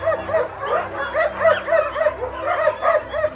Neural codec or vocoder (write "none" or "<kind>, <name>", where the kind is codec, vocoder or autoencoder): none